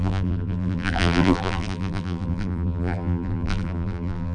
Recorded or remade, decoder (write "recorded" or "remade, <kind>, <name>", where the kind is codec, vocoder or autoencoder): remade, vocoder, BigVGAN v2